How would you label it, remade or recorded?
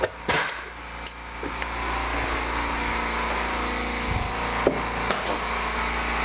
recorded